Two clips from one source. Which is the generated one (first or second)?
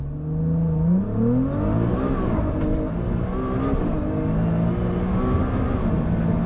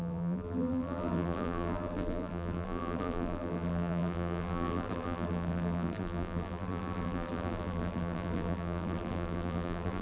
second